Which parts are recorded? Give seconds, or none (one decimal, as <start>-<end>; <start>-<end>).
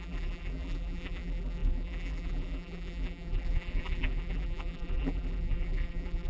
none